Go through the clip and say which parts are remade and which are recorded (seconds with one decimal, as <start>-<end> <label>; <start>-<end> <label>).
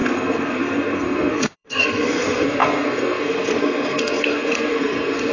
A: 0.0-5.3 remade